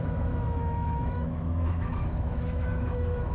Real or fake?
fake